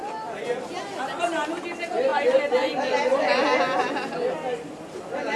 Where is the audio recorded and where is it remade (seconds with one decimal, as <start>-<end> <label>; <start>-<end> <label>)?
0.0-5.4 recorded